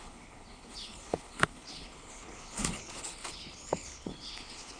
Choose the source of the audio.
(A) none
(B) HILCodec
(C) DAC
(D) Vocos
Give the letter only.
B